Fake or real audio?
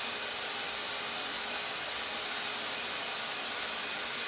real